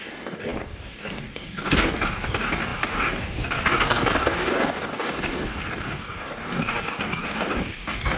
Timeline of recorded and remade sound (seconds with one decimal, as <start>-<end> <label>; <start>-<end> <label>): 0.0-8.2 remade